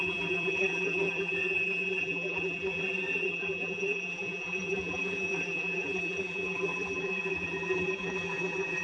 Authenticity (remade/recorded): remade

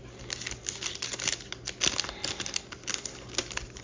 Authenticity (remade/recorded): recorded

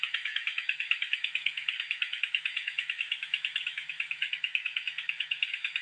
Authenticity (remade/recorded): remade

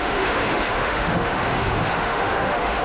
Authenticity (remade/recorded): remade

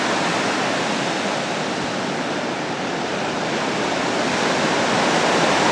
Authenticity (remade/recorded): recorded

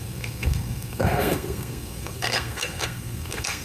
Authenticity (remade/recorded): remade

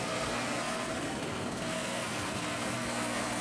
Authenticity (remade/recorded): remade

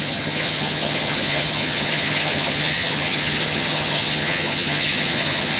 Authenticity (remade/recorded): remade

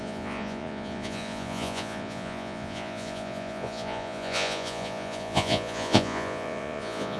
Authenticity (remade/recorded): remade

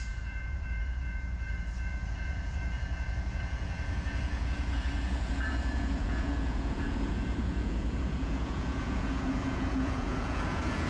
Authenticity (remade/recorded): remade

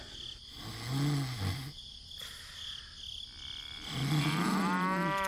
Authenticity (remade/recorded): recorded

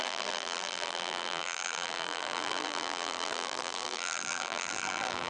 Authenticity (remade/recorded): remade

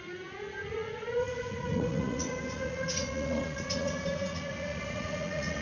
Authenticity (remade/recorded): remade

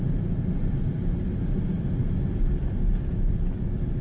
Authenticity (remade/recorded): recorded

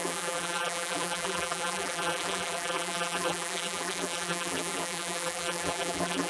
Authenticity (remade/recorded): remade